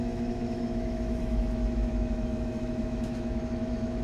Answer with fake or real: fake